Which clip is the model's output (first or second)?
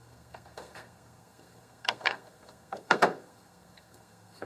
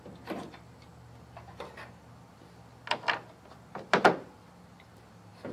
first